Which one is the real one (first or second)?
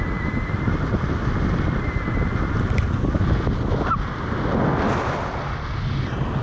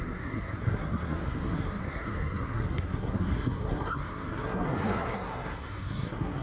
first